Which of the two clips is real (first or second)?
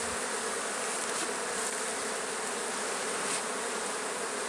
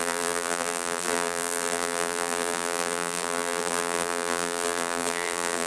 first